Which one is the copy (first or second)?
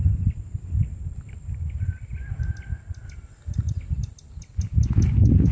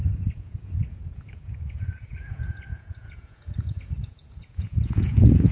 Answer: second